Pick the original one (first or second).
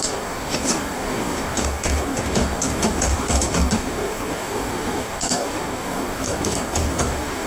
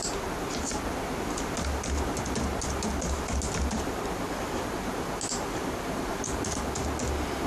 second